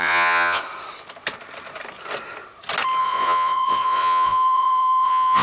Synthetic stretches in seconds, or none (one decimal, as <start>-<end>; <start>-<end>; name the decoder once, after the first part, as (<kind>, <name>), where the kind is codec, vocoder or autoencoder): 0.0-0.6 (vocoder, Vocos); 3.0-5.4